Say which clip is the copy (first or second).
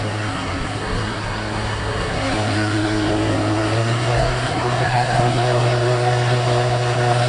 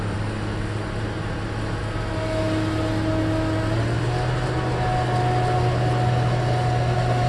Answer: first